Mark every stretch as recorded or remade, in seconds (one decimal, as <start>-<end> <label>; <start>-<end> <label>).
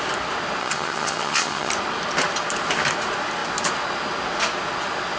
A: 0.0-0.6 recorded; 0.6-1.7 remade; 1.7-5.2 recorded